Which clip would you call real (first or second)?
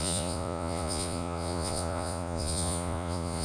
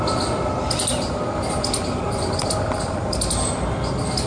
second